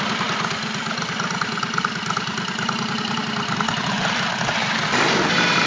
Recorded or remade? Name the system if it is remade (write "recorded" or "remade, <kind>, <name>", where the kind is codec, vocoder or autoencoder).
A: remade, vocoder, BigVGAN v2